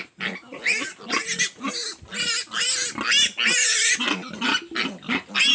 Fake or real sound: real